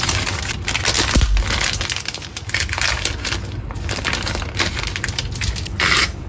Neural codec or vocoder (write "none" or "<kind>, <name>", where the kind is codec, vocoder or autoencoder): none